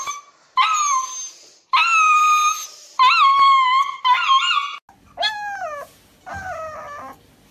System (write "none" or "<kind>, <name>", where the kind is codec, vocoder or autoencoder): none